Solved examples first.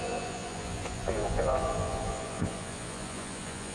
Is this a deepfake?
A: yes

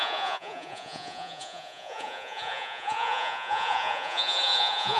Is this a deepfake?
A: yes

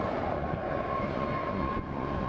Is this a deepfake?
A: yes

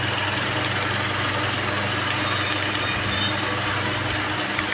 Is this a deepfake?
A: no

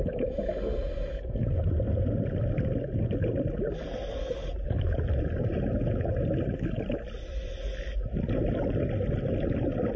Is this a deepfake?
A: no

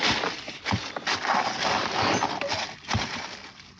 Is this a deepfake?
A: no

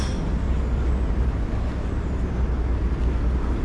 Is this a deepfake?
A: no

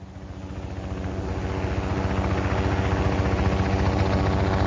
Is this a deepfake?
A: no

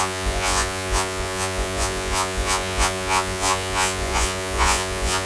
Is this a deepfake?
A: yes